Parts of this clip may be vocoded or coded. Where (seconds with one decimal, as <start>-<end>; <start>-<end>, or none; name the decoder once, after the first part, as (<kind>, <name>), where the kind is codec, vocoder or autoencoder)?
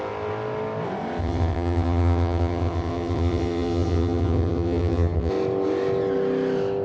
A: 1.2-5.3 (vocoder, HiFi-GAN)